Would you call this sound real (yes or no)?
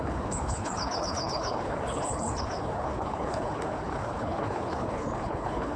no